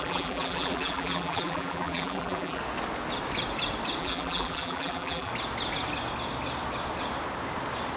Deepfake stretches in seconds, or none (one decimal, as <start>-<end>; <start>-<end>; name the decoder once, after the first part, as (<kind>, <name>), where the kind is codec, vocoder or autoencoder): 0.0-2.6 (vocoder, BigVGAN v2); 4.0-5.3